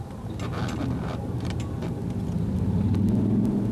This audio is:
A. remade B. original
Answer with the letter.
B